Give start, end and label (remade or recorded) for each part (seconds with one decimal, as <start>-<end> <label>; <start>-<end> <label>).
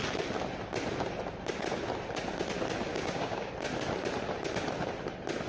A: 0.0-2.9 recorded; 2.9-3.5 remade; 3.5-5.5 recorded